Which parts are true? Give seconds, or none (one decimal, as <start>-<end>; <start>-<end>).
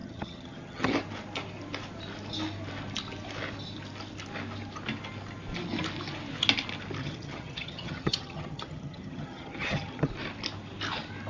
0.9-7.0; 10.1-11.3